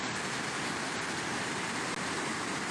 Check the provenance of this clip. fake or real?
real